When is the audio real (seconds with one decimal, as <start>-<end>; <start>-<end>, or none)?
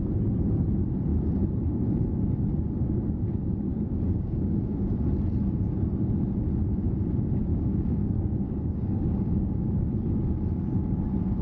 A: 0.0-3.7; 4.9-7.5; 9.9-11.4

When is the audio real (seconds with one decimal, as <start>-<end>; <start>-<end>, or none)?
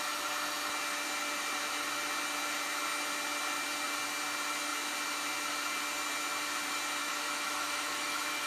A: 0.0-7.0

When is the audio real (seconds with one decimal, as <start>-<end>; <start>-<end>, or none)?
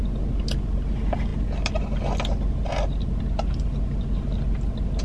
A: 0.0-5.0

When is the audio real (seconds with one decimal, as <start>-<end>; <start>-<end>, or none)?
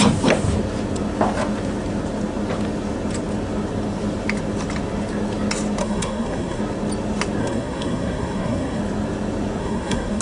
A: 0.0-5.8; 6.6-7.4; 8.8-9.6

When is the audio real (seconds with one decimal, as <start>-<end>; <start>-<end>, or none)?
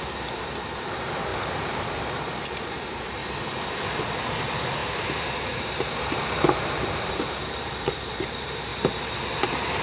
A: 3.2-4.0; 8.7-9.4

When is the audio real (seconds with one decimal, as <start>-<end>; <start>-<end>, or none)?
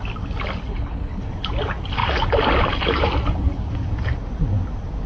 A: 0.0-0.7; 1.3-5.1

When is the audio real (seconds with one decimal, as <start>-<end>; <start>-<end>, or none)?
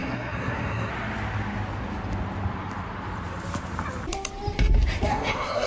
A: 0.9-5.1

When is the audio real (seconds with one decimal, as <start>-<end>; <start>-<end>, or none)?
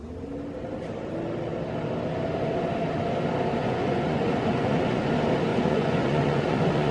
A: 0.0-3.6; 5.1-5.5